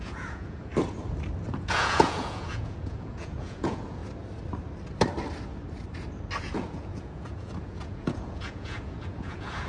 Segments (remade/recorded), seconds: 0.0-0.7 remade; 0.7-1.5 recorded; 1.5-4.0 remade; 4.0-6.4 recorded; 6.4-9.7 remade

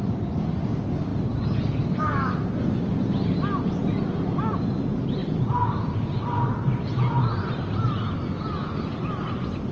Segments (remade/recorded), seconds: 0.0-9.7 recorded

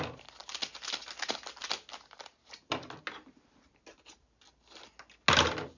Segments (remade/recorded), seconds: 0.0-5.8 recorded

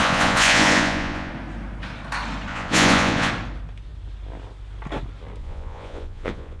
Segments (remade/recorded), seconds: 0.0-1.3 remade; 1.3-2.5 recorded; 2.5-3.3 remade; 3.3-5.4 recorded; 5.4-6.6 remade

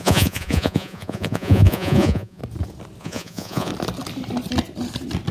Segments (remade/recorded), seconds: 0.0-2.4 remade; 2.4-3.0 recorded; 3.0-3.7 remade; 3.7-5.3 recorded

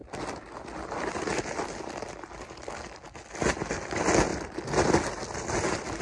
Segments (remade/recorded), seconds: 0.0-6.0 recorded

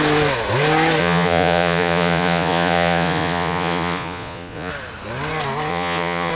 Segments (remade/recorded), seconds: 0.0-1.0 recorded; 1.0-4.7 remade; 4.7-5.7 recorded; 5.7-6.3 remade

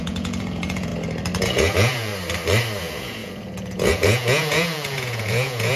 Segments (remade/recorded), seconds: 0.0-0.9 remade; 0.9-1.4 recorded; 1.4-2.1 remade; 2.1-2.8 recorded; 2.8-5.8 remade